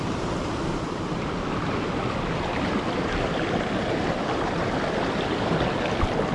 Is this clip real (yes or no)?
no